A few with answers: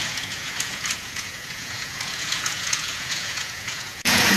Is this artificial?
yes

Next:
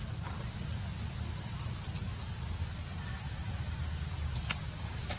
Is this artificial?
no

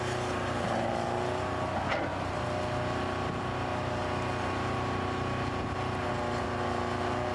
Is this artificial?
no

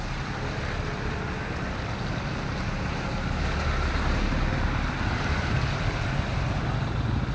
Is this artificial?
no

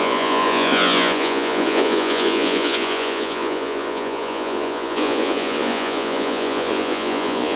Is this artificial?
yes